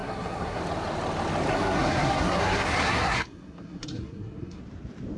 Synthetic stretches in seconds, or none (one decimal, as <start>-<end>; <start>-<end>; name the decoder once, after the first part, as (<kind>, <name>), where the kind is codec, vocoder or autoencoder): 0.0-0.6 (codec, SNAC); 1.5-4.6